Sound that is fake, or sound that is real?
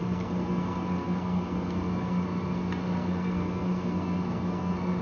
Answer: fake